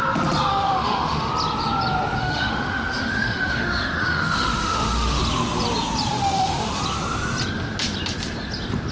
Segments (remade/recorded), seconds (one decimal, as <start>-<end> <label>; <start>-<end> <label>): 0.0-0.5 recorded; 0.5-1.3 remade; 1.3-2.2 recorded; 2.2-5.2 remade; 5.2-6.1 recorded; 6.1-6.8 remade; 6.8-8.9 recorded